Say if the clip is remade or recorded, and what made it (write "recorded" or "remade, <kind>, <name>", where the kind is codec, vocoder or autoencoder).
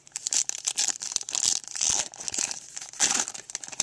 recorded